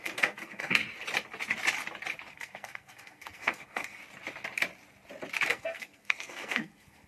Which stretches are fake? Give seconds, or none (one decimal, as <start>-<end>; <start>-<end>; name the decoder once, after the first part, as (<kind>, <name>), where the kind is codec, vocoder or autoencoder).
0.0-0.8 (codec, SNAC); 2.3-4.0; 5.5-7.1